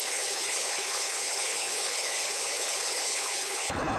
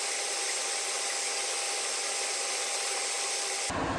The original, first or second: second